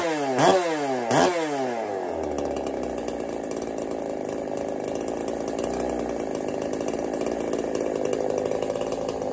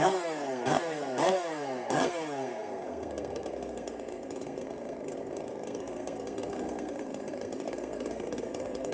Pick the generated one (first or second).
second